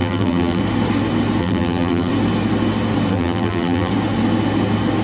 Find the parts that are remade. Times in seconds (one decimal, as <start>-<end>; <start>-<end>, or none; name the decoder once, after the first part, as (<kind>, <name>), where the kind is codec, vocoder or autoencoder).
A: 0.0-0.6 (vocoder, BigVGAN v2); 1.4-2.1; 3.1-3.9